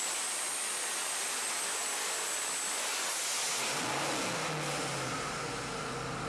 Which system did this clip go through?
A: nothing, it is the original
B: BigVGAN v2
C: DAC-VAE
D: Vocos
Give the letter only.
A